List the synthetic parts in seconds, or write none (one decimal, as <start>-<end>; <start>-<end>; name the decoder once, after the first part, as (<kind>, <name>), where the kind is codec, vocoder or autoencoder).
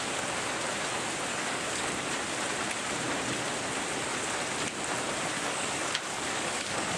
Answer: 1.3-1.9 (codec, DAC); 5.3-7.0